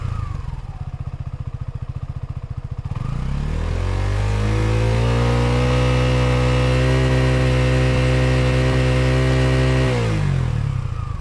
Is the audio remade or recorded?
recorded